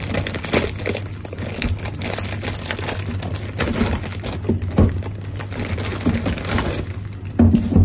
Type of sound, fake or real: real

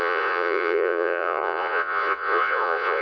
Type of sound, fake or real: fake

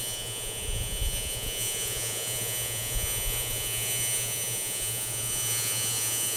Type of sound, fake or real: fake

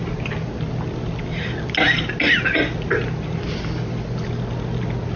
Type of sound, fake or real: real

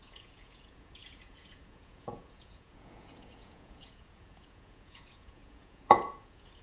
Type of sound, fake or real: fake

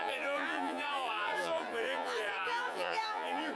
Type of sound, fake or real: fake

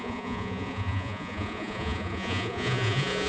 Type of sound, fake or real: fake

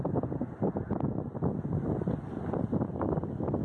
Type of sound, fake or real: real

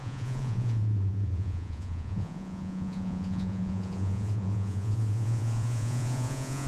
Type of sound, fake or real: fake